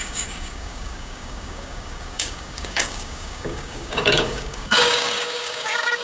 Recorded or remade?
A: remade